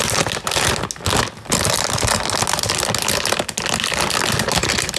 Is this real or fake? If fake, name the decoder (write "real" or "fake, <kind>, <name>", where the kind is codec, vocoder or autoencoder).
real